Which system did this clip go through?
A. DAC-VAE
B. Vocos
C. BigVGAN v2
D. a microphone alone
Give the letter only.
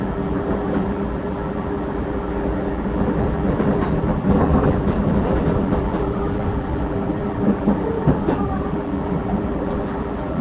C